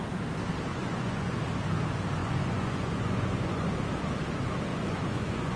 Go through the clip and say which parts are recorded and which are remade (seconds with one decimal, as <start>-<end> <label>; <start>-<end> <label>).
0.0-0.7 recorded; 0.7-1.4 remade; 1.4-2.2 recorded; 2.2-3.7 remade; 3.7-4.7 recorded; 4.7-5.6 remade